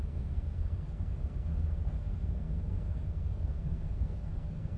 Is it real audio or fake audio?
fake